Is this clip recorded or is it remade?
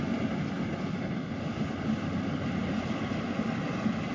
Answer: recorded